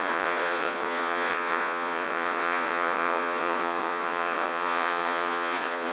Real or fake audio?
fake